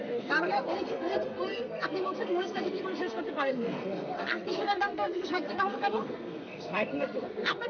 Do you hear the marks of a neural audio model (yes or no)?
yes